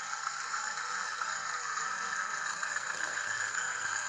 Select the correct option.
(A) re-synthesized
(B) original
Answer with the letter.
A